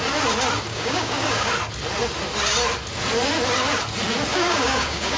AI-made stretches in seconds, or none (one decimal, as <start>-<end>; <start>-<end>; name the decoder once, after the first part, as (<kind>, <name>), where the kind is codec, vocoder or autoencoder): 0.7-1.5 (codec, DAC); 4.3-5.2